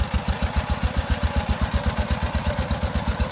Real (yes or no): yes